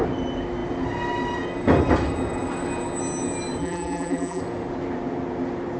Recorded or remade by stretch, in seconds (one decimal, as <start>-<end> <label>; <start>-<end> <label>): 0.0-3.6 recorded; 3.6-4.4 remade; 4.4-5.8 recorded